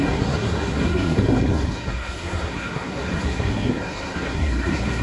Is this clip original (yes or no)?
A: no